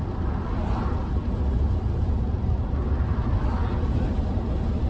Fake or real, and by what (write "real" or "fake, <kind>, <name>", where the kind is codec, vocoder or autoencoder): real